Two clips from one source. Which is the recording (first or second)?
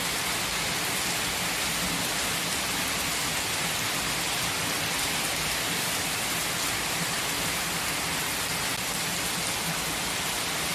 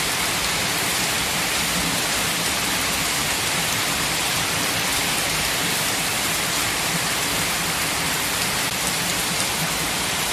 first